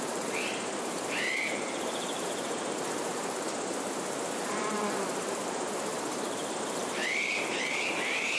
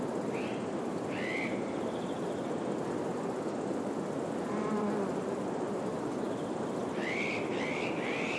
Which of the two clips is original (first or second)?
second